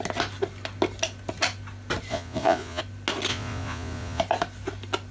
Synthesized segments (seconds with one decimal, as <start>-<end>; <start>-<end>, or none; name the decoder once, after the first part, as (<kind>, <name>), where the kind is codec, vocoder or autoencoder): 2.1-2.8 (vocoder, Vocos); 3.3-4.2